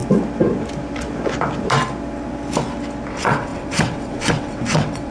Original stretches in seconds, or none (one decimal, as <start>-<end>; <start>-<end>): 0.0-3.1